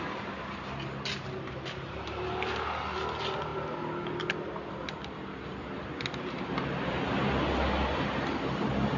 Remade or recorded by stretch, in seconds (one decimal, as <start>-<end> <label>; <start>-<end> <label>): 0.0-9.0 recorded